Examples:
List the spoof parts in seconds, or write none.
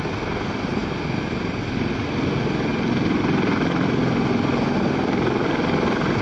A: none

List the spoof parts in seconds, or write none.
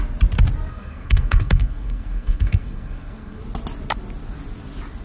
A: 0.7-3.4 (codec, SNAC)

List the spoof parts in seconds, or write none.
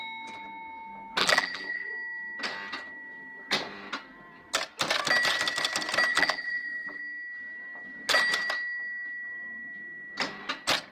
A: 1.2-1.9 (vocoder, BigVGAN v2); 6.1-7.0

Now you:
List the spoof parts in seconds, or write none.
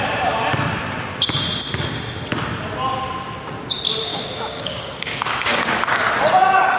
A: 4.1-5.7 (codec, DAC)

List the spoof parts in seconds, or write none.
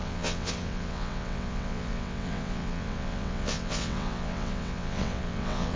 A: 0.0-5.8 (vocoder, WaveNeXt)